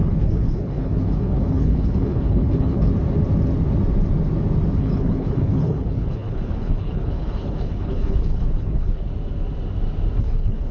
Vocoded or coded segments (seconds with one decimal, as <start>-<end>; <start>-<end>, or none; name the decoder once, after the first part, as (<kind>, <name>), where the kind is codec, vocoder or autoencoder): 0.0-2.9 (codec, HILCodec); 4.8-9.1; 10.2-10.7